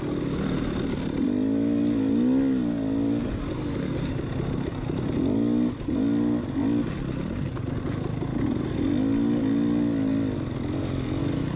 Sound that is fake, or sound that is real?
real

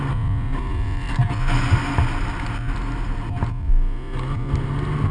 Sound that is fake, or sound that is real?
real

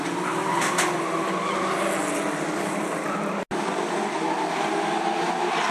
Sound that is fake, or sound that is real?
real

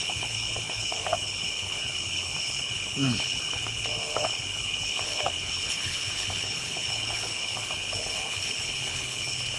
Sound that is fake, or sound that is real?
fake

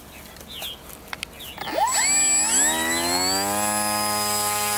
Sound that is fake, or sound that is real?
real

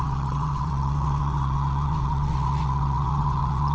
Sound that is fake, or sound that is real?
fake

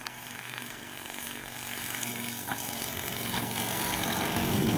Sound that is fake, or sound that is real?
fake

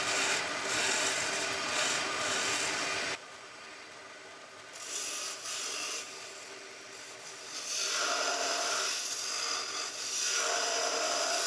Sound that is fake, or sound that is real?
real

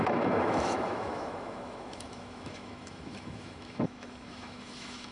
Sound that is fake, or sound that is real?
fake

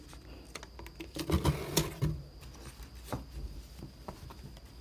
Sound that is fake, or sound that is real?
real